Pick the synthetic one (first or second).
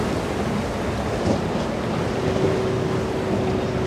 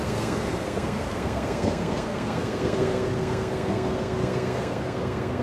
second